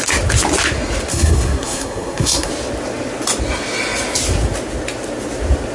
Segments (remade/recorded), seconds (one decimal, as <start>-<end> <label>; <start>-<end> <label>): 0.0-1.1 recorded; 1.1-2.5 remade; 2.5-5.7 recorded